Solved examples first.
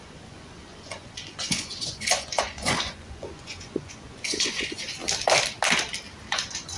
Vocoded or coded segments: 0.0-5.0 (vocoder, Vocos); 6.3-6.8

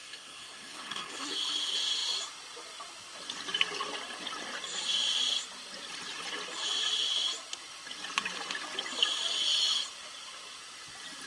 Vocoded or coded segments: 0.0-1.3 (codec, SNAC)

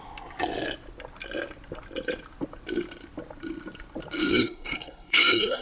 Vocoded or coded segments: 4.3-5.6 (codec, SNAC)

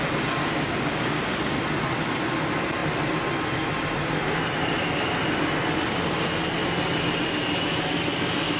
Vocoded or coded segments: 0.4-1.6 (codec, DAC)

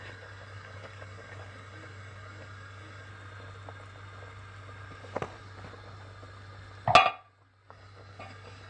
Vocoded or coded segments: 0.0-3.1 (codec, DAC); 7.7-8.7

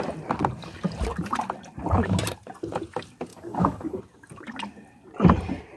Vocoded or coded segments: 3.3-4.0 (codec, DAC)

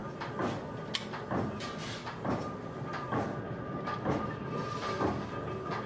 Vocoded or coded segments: none

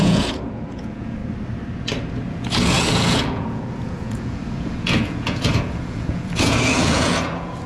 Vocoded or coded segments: 0.0-1.2 (vocoder, Vocos); 2.3-7.7